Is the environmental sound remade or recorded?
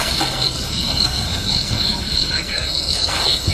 remade